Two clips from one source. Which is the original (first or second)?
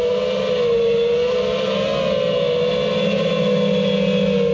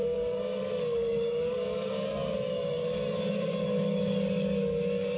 first